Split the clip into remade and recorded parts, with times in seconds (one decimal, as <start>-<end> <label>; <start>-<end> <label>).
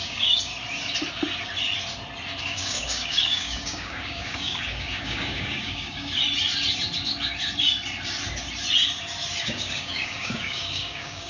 0.0-0.5 remade; 0.5-2.4 recorded; 2.4-6.2 remade; 6.2-9.4 recorded; 9.4-11.3 remade